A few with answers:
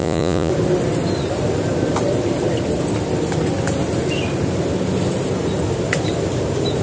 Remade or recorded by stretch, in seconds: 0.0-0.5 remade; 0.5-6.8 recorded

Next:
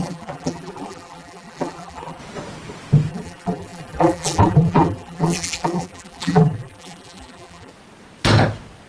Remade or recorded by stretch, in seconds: 0.0-2.2 remade; 2.2-3.1 recorded; 3.1-7.7 remade; 7.7-8.9 recorded

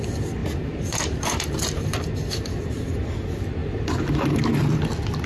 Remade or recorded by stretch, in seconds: 0.0-0.4 recorded; 0.4-2.9 remade; 2.9-3.6 recorded; 3.6-4.7 remade; 4.7-5.3 recorded

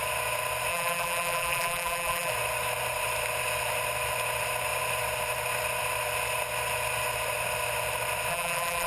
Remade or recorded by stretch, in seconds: 0.0-0.7 recorded; 0.7-2.3 remade; 2.3-8.3 recorded; 8.3-8.9 remade

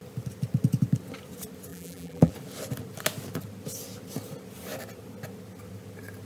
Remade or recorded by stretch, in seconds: 0.0-1.7 recorded; 1.7-2.3 remade; 2.3-6.3 recorded

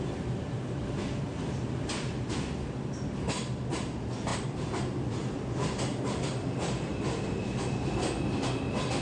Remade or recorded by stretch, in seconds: 0.0-1.3 recorded; 1.3-2.1 remade; 2.1-9.0 recorded

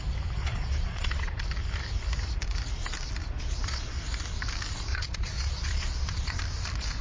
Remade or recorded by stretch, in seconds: 0.0-0.4 recorded; 0.4-1.4 remade; 1.4-3.2 recorded; 3.2-4.0 remade; 4.0-4.9 recorded; 4.9-6.4 remade; 6.4-7.0 recorded